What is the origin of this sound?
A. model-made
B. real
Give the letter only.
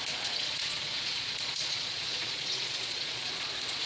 A